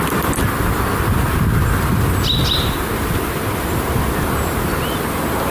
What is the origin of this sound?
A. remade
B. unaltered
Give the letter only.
B